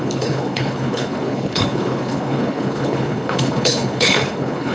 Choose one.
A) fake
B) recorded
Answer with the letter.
A